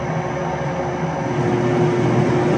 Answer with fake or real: real